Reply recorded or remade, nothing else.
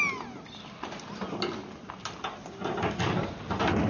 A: recorded